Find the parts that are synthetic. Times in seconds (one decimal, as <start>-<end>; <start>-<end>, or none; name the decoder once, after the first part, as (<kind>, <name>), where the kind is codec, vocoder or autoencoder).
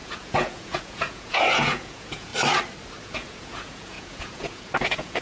0.0-2.3 (vocoder, Vocos); 3.0-5.2